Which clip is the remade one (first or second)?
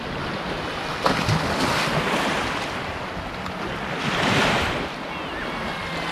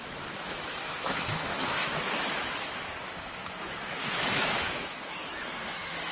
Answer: second